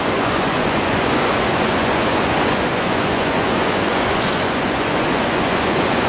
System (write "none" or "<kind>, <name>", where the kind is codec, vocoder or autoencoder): vocoder, Vocos